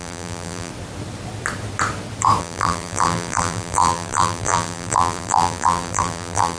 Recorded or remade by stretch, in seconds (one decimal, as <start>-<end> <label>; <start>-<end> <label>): 0.0-0.7 remade; 0.7-2.4 recorded; 2.4-6.6 remade